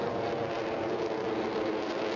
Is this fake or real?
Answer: real